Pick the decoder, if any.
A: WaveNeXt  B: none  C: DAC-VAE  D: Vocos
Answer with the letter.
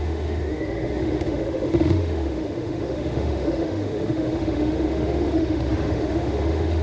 C